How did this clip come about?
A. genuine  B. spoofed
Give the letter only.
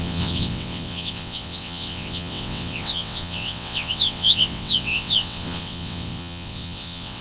B